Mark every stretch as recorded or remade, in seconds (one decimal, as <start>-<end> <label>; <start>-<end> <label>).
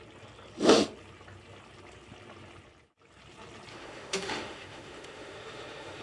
0.0-3.7 recorded; 3.7-6.0 remade